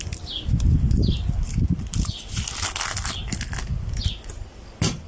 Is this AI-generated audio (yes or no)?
no